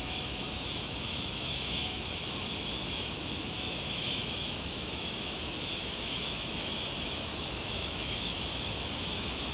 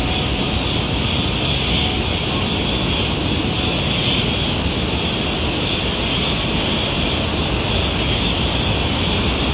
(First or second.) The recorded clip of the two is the second